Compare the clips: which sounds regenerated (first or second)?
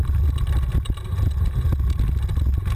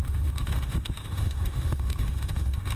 second